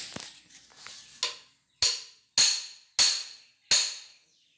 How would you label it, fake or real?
real